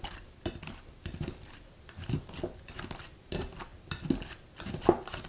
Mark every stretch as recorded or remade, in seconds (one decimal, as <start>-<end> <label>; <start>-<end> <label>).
0.0-5.3 recorded